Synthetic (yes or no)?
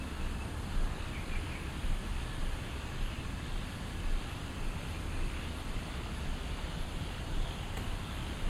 no